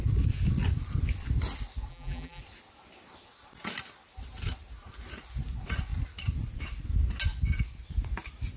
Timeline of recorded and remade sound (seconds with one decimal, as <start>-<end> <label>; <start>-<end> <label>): 0.0-1.9 recorded; 1.9-2.4 remade; 2.4-8.6 recorded